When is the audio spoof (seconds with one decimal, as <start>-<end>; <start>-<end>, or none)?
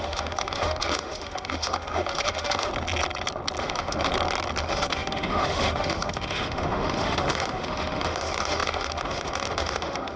0.0-2.7; 3.6-4.1; 4.6-10.2